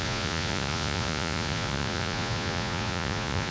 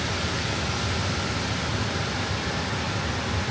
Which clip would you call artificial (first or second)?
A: first